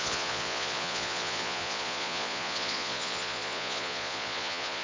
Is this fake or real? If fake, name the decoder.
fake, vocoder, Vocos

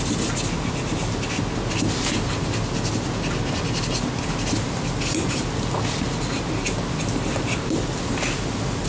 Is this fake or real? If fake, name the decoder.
real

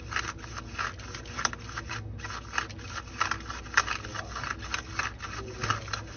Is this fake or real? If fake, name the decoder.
real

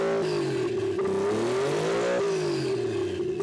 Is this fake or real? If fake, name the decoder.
real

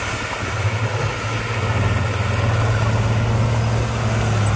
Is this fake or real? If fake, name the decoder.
real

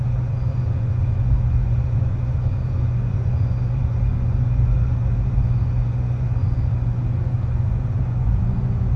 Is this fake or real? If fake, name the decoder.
fake, vocoder, Vocos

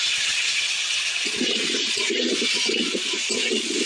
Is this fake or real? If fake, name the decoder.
fake, vocoder, Vocos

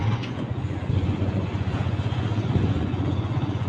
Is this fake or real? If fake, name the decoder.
fake, vocoder, Vocos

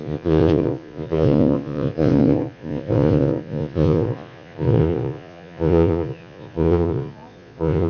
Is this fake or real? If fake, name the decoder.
fake, vocoder, Vocos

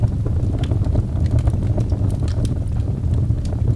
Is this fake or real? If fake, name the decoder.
real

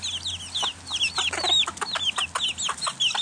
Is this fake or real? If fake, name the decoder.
real